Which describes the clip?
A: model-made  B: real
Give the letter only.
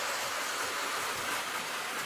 B